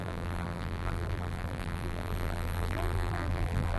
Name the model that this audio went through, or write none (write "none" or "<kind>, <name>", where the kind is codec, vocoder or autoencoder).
vocoder, BigVGAN v2